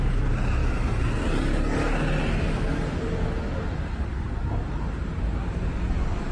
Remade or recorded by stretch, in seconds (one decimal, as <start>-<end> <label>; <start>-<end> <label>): 0.0-6.3 recorded